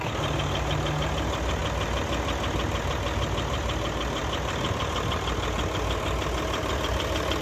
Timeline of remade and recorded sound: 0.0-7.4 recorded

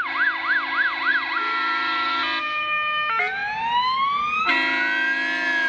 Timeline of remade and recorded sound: 0.0-1.1 recorded; 1.1-2.2 remade; 2.2-5.7 recorded

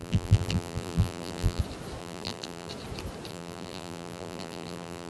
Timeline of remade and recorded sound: 0.0-1.6 remade; 1.6-2.0 recorded; 2.0-2.7 remade; 2.7-3.3 recorded; 3.3-5.1 remade

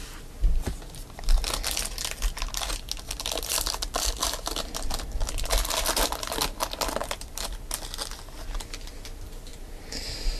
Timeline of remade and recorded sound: 0.0-10.4 recorded

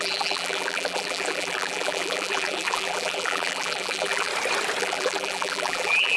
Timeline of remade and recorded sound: 0.0-4.3 remade; 4.3-4.8 recorded; 4.8-6.2 remade

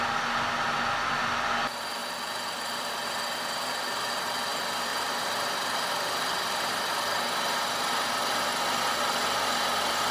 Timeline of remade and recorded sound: 0.0-10.1 recorded

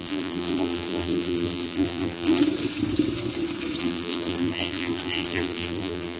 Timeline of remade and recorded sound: 0.0-2.4 remade; 2.4-3.8 recorded; 3.8-6.2 remade